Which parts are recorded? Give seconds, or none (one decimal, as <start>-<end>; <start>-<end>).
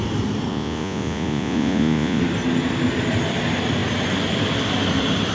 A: 0.0-0.5; 2.2-5.3